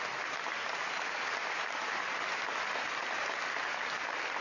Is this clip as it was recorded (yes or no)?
no